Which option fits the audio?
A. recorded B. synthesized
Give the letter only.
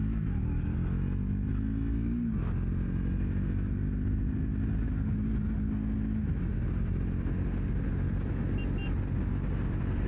A